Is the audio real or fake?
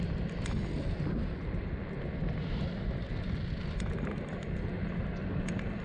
real